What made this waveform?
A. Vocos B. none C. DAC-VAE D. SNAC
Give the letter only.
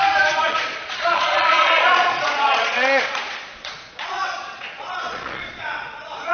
A